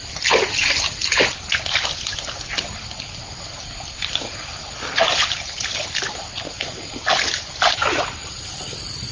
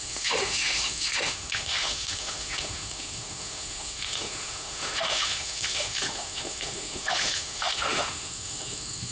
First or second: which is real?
first